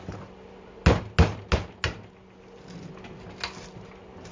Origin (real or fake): real